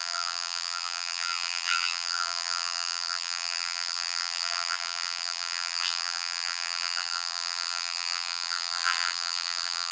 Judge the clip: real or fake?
fake